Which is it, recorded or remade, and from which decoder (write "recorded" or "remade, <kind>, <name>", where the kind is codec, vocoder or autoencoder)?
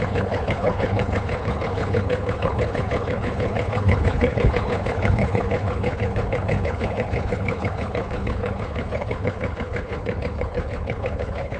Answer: remade, codec, HILCodec